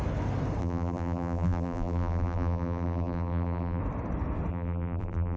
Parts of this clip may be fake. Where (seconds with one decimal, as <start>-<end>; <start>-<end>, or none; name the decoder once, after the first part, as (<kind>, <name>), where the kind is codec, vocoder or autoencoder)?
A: 0.6-3.8 (vocoder, BigVGAN v2); 4.5-5.4